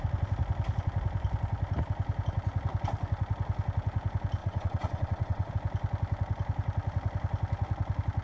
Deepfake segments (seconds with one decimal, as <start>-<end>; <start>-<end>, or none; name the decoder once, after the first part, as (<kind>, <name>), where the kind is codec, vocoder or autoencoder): 4.4-5.5 (vocoder, Vocos)